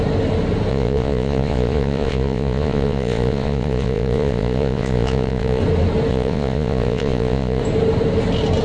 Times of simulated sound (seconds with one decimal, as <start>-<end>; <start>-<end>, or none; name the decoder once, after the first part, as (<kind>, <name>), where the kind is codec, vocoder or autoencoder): 0.7-5.6 (vocoder, Vocos); 6.1-7.6

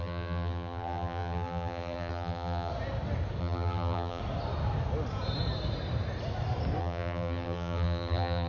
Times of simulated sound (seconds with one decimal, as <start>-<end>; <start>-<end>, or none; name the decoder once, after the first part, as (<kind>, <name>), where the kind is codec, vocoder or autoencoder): 0.0-2.7 (vocoder, BigVGAN v2); 3.4-4.2; 6.8-8.5